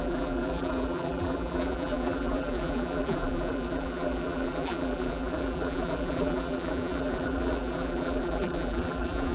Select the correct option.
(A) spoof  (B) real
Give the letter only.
A